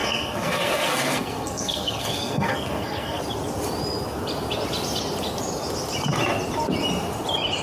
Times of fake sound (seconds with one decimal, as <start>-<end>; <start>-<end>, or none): 0.0-3.2